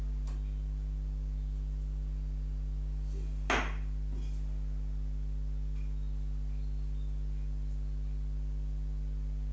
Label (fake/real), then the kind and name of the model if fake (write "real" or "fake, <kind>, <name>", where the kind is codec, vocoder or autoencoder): real